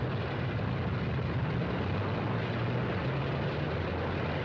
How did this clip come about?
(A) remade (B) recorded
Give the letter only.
B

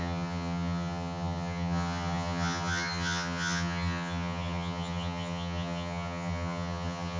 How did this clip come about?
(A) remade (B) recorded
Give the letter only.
A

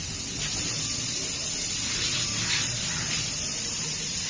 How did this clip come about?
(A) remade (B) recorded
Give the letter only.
B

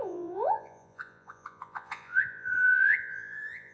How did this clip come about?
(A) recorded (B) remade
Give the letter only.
B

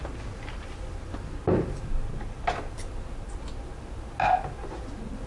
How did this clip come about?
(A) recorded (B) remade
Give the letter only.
A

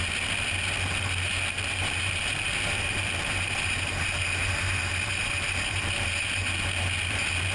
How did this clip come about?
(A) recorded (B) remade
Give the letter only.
A